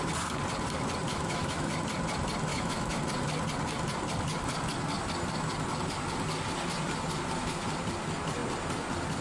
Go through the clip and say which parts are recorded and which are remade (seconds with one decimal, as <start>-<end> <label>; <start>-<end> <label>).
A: 0.0-1.1 recorded; 1.1-1.7 remade; 1.7-2.5 recorded; 2.5-3.0 remade; 3.0-9.2 recorded

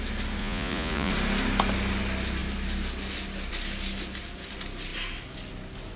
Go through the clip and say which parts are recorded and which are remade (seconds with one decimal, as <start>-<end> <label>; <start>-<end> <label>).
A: 0.0-0.4 recorded; 0.4-1.1 remade; 1.1-6.0 recorded

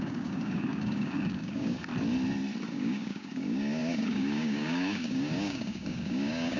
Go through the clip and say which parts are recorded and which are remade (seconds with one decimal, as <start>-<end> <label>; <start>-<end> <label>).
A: 0.0-1.9 remade; 1.9-2.7 recorded; 2.7-6.6 remade

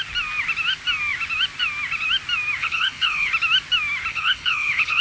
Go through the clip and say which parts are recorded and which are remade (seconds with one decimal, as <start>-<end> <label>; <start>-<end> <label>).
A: 0.0-2.6 recorded; 2.6-3.3 remade; 3.3-4.1 recorded; 4.1-5.0 remade

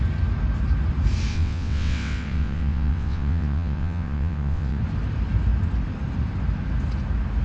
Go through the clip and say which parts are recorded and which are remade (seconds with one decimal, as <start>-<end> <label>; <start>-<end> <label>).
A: 0.0-1.3 recorded; 1.3-4.8 remade; 4.8-7.4 recorded

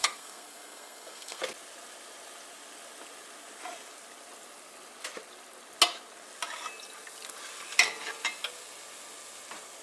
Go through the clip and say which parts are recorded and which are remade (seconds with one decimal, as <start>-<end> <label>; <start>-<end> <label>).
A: 0.0-1.4 remade; 1.4-9.8 recorded